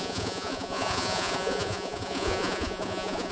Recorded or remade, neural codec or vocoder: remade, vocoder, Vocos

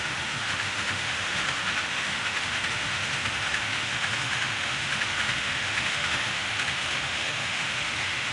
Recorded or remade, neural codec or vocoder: remade, autoencoder, DAC-VAE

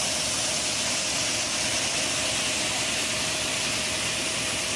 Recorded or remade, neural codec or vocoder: recorded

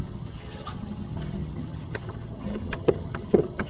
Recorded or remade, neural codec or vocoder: remade, vocoder, HiFi-GAN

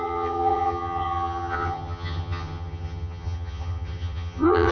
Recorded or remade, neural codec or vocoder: remade, vocoder, HiFi-GAN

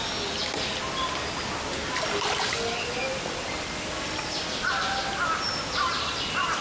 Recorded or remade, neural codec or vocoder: recorded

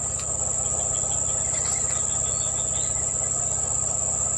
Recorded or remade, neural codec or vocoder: recorded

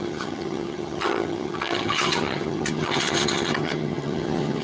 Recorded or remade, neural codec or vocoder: remade, vocoder, HiFi-GAN